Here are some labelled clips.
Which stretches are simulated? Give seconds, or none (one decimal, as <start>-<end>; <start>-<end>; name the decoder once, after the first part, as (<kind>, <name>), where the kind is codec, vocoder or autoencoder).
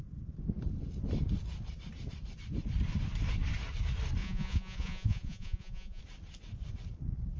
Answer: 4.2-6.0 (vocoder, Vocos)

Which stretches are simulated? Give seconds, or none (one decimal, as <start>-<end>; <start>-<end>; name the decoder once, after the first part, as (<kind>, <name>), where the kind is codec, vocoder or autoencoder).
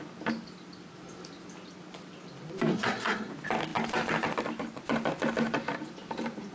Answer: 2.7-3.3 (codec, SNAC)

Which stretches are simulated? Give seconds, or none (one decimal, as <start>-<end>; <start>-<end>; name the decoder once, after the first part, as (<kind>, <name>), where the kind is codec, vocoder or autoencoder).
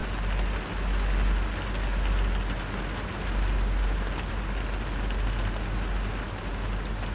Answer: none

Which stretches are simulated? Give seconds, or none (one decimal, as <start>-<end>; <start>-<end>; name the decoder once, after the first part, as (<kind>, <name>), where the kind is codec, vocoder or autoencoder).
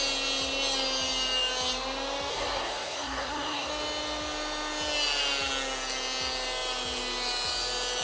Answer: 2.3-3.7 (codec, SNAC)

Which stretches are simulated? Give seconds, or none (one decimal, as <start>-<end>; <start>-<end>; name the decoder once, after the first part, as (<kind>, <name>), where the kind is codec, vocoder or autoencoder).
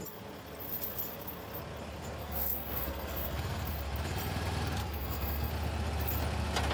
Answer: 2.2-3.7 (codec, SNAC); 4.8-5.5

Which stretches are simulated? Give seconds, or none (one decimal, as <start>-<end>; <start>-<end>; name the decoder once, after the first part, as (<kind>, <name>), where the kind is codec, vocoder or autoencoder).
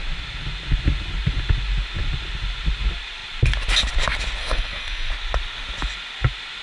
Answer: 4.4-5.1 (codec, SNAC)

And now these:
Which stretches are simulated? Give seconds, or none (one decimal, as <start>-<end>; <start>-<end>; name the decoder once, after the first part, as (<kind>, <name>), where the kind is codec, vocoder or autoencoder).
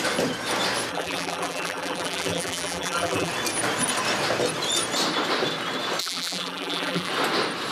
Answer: 0.9-3.3 (vocoder, BigVGAN v2); 6.0-7.1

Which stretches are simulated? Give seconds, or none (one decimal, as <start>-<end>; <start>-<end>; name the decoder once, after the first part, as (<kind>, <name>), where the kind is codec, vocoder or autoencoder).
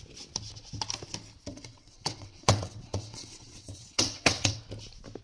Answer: 1.5-4.6 (vocoder, WaveNeXt)